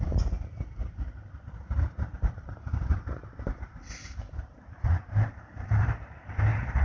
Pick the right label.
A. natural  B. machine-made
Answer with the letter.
B